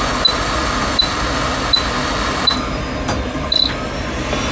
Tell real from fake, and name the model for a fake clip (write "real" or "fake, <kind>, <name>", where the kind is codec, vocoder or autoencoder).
real